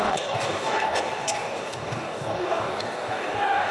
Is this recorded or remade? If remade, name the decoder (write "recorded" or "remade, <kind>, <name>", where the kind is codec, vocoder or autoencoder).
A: remade, codec, DAC